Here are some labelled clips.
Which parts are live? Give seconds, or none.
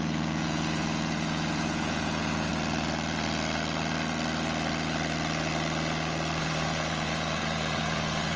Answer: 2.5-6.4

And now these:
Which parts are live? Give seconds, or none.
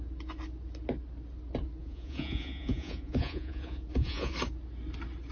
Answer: 0.0-1.8; 4.3-5.3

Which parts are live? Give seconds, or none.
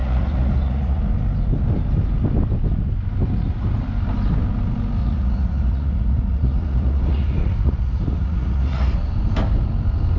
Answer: 1.0-5.0; 9.1-10.2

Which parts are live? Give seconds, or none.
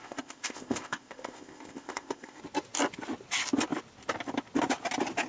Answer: 2.4-5.3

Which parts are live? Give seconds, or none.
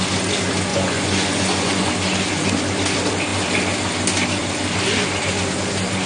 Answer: 0.0-0.7; 1.9-6.1